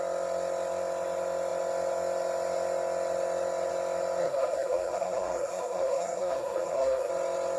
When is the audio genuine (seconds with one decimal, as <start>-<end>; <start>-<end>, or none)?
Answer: 0.0-4.2; 7.1-7.6